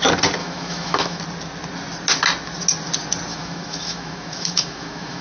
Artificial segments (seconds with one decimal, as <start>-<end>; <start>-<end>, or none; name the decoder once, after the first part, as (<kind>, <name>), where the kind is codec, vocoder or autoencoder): 0.4-1.2 (autoencoder, DAC-VAE); 3.3-5.2